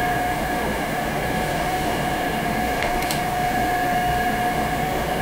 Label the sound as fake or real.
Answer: fake